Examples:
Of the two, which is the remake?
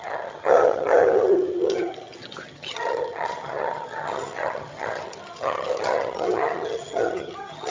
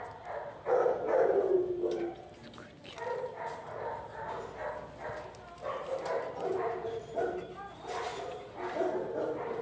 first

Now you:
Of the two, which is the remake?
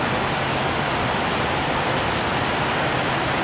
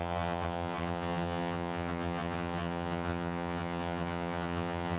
second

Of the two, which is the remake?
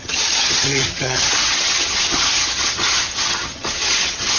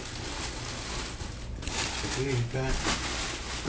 first